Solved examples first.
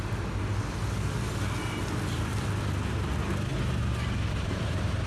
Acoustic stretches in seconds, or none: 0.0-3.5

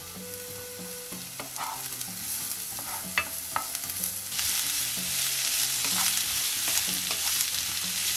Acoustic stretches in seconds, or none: 0.0-8.2

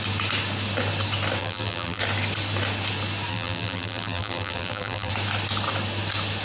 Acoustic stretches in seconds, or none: 0.0-1.4; 2.0-3.3; 5.1-6.4

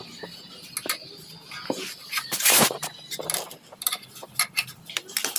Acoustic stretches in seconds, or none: 0.0-2.0; 3.2-5.4

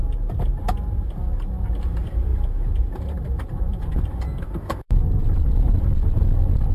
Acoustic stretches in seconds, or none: 0.0-2.3; 5.8-6.7

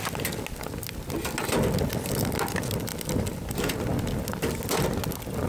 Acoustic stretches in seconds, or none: 0.0-5.5